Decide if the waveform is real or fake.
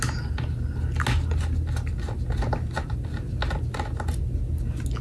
real